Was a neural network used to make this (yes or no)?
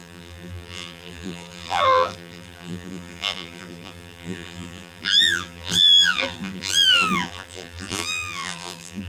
yes